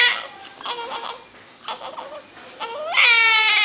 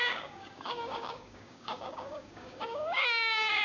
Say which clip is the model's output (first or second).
second